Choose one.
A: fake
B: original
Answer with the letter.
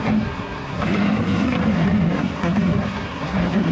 A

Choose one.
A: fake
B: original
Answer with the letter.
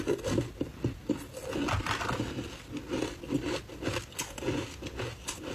B